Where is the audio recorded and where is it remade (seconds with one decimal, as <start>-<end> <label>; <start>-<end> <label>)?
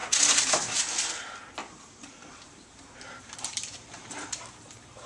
0.0-1.6 recorded; 1.6-5.1 remade